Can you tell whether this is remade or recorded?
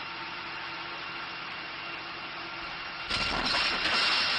recorded